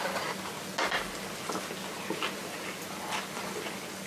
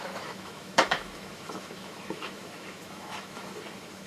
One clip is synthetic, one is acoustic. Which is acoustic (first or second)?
first